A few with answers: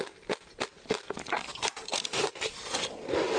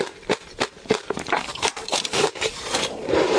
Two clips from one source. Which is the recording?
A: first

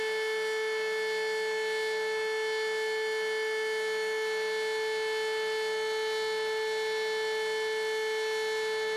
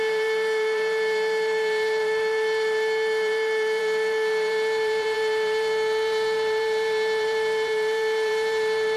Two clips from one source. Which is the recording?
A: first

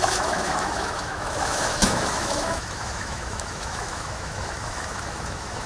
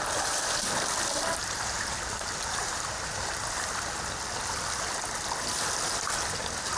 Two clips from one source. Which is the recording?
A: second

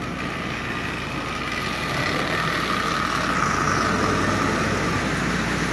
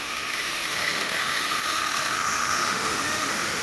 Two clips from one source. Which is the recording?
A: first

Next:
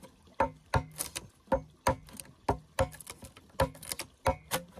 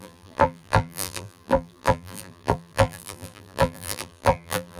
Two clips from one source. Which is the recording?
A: first